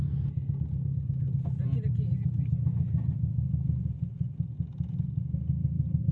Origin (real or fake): real